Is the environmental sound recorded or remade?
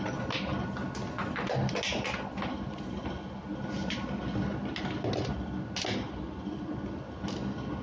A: recorded